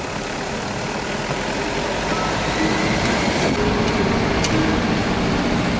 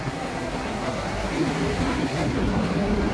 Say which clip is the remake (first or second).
second